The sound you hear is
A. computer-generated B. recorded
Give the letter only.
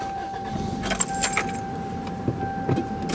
B